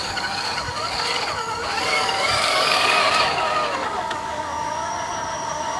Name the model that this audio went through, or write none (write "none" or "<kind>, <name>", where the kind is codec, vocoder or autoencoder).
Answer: codec, DAC